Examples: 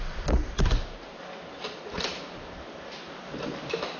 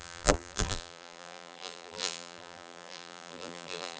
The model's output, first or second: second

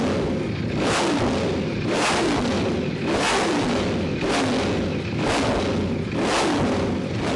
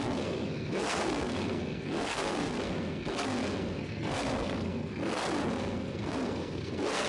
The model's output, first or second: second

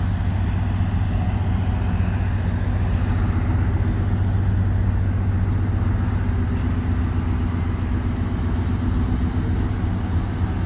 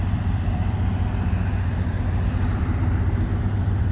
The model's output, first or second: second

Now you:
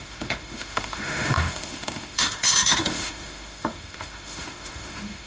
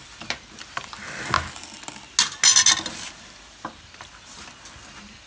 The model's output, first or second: first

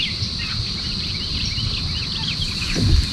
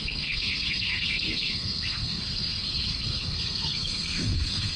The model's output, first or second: second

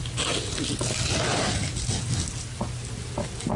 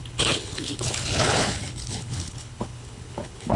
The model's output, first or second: second